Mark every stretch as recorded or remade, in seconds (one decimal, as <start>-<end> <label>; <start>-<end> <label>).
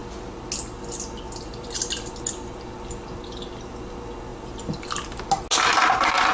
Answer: 0.0-6.3 recorded